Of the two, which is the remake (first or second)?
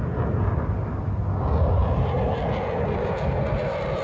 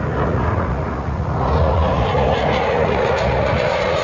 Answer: second